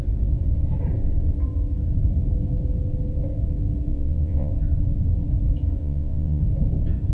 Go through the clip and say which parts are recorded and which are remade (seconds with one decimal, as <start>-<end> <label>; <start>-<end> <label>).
0.0-3.9 recorded; 3.9-4.5 remade; 4.5-5.8 recorded; 5.8-6.4 remade; 6.4-7.1 recorded